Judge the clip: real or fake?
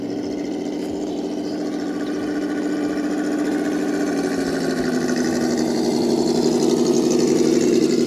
real